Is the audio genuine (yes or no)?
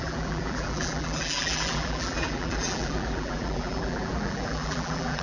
no